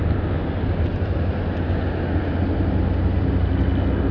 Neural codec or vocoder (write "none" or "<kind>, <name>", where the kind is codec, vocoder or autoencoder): none